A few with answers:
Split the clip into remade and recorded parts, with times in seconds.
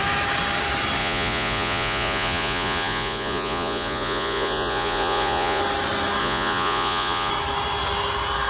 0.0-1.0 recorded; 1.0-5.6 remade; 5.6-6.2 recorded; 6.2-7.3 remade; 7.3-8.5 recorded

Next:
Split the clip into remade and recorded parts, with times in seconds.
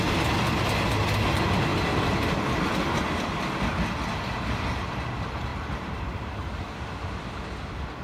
0.0-5.5 recorded; 5.5-6.5 remade; 6.5-8.0 recorded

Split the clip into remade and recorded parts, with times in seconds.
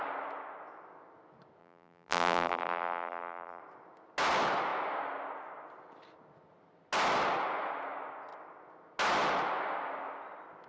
0.0-1.6 recorded; 1.6-3.6 remade; 3.6-10.7 recorded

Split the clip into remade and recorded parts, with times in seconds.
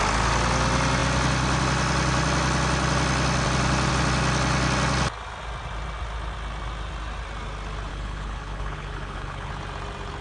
0.0-7.9 recorded; 7.9-9.5 remade; 9.5-10.2 recorded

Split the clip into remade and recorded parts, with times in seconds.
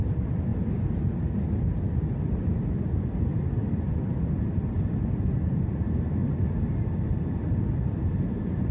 0.0-0.5 remade; 0.5-5.1 recorded; 5.1-6.2 remade; 6.2-8.0 recorded; 8.0-8.7 remade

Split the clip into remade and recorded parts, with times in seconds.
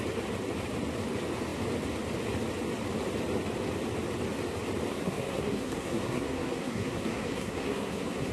0.0-4.9 recorded; 4.9-8.3 remade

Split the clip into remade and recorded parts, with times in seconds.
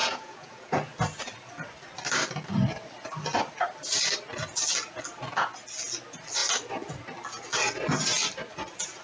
0.0-0.7 remade; 0.7-9.0 recorded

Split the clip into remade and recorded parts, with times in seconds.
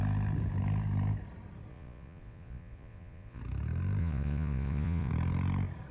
0.0-1.7 recorded; 1.7-3.4 remade; 3.4-4.0 recorded; 4.0-5.1 remade; 5.1-5.9 recorded